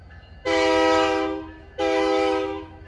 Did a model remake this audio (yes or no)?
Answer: yes